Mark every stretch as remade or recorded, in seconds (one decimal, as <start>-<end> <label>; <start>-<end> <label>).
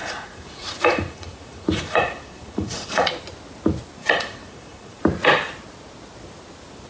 0.0-3.1 remade; 3.1-4.0 recorded; 4.0-5.0 remade; 5.0-6.9 recorded